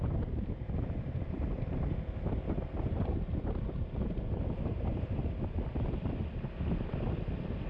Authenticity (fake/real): real